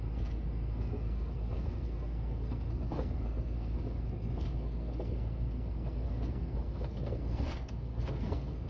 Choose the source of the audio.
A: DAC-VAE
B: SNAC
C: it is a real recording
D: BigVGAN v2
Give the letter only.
B